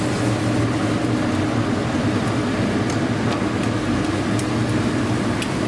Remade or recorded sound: recorded